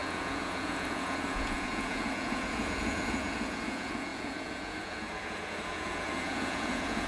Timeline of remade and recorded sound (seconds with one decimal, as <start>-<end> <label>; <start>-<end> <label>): 0.0-7.1 remade